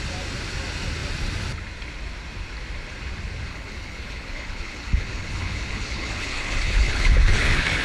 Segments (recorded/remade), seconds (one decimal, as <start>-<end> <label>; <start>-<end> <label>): 0.0-3.5 recorded; 3.5-7.8 remade